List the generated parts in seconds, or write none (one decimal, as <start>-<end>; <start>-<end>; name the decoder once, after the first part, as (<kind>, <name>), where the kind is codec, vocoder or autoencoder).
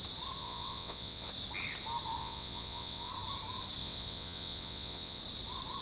0.4-1.3 (vocoder, WaveNeXt); 2.2-3.1; 3.8-5.2